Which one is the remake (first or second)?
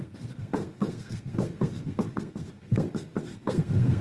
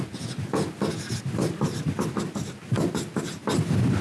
first